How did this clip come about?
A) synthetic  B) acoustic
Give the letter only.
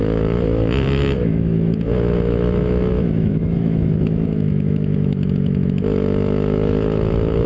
A